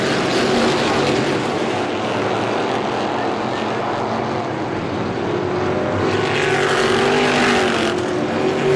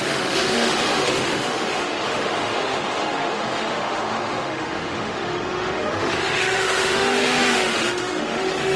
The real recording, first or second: first